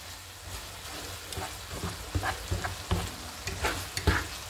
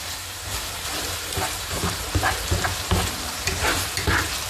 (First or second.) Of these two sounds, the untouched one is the first